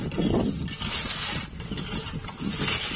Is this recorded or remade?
recorded